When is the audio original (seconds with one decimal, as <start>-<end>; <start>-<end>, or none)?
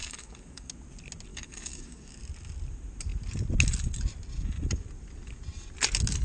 0.7-1.3; 2.2-6.2